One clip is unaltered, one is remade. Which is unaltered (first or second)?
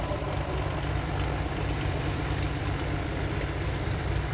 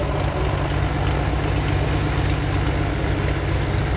second